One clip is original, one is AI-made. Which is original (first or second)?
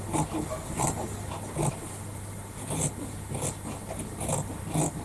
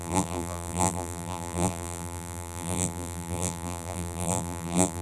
first